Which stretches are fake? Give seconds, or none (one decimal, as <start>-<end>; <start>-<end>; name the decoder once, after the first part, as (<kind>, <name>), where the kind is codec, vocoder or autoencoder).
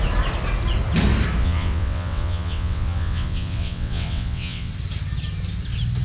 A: 1.4-4.7 (vocoder, WaveNeXt)